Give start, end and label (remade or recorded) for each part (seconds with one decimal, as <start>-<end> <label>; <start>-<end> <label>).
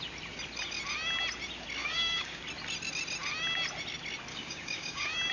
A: 0.0-1.8 recorded; 1.8-2.4 remade; 2.4-4.3 recorded; 4.3-5.3 remade